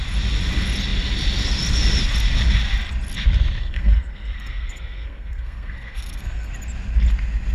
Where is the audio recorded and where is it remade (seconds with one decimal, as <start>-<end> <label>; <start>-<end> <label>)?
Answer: 0.0-3.6 recorded; 3.6-6.5 remade; 6.5-7.5 recorded